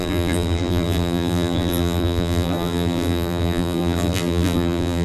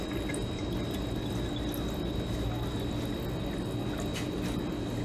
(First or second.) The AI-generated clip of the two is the first